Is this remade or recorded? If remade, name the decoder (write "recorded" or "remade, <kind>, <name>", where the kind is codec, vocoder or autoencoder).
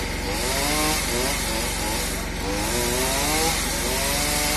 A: recorded